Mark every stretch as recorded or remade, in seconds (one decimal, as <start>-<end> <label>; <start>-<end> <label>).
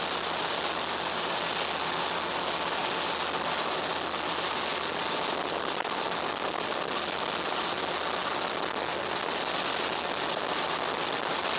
0.0-11.6 recorded